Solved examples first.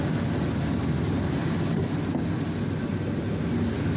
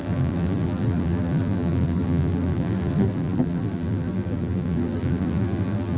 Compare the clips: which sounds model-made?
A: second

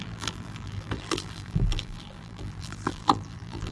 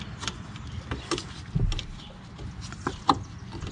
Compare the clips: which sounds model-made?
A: first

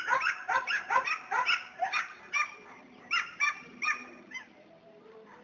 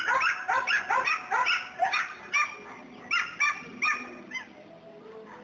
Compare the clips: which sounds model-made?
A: first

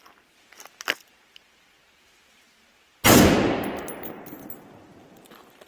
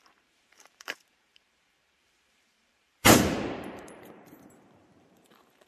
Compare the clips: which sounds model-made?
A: second